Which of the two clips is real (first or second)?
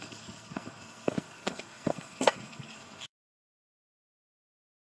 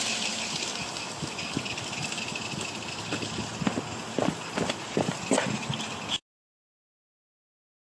second